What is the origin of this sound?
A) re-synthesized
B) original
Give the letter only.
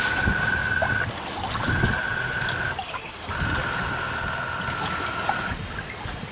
B